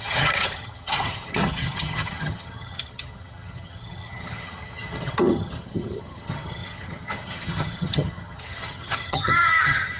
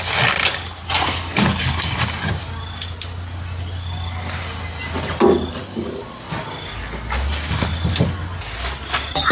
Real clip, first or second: second